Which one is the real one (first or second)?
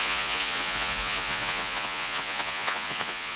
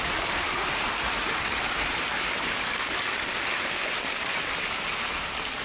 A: second